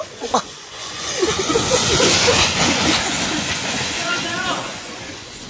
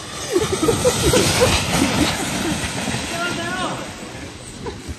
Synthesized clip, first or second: first